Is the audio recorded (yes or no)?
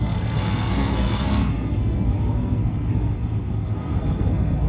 no